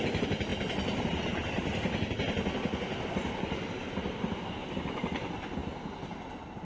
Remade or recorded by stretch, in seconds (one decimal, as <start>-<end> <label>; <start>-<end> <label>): 0.0-6.6 recorded